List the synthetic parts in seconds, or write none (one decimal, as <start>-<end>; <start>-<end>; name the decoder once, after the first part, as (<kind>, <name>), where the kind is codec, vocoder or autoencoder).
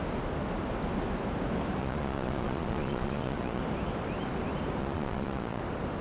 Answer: 1.8-3.6 (vocoder, Vocos); 4.8-5.6